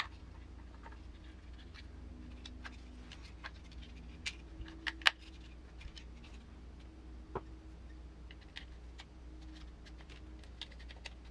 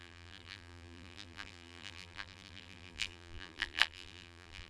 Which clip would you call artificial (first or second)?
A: second